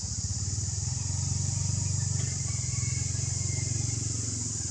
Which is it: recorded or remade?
recorded